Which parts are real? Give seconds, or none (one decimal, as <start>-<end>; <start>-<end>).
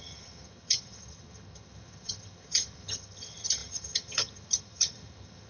none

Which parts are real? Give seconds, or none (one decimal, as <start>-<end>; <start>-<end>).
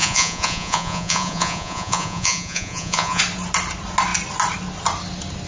3.2-5.5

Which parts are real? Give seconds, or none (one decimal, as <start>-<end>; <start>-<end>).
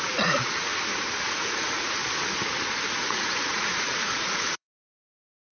0.7-1.2; 2.0-2.9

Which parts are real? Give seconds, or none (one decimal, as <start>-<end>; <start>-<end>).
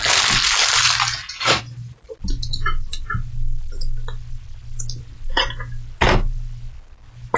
0.0-7.4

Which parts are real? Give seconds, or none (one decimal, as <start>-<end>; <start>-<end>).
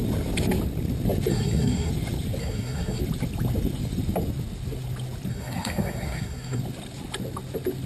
0.0-1.3; 1.9-2.4; 3.0-5.3; 6.6-7.9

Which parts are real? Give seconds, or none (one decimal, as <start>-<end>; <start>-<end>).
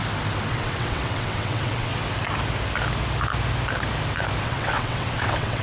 0.0-0.5; 1.9-4.4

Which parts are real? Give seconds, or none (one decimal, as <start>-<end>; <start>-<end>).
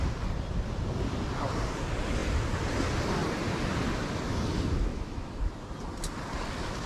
0.0-4.9; 5.4-6.9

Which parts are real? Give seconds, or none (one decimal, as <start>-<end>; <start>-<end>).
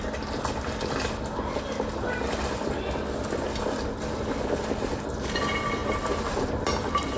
0.0-7.2